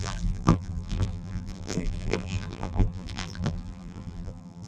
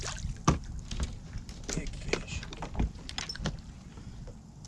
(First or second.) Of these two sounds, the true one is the second